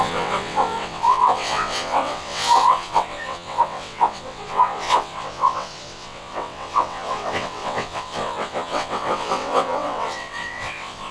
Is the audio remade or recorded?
remade